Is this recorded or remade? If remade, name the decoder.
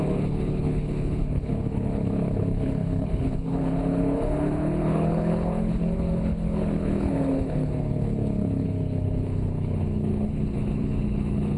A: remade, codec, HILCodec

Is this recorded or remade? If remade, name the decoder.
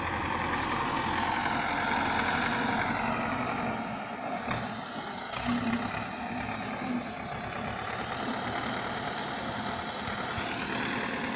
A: recorded